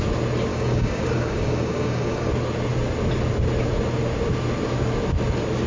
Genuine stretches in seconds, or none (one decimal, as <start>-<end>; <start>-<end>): 0.0-0.5; 2.3-5.7